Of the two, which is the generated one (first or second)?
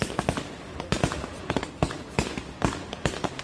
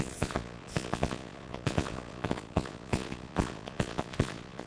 second